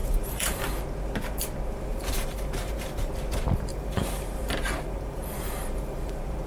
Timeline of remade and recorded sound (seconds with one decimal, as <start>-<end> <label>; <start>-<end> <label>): 0.0-0.6 remade; 0.6-1.9 recorded; 1.9-3.1 remade; 3.1-3.7 recorded; 3.7-6.5 remade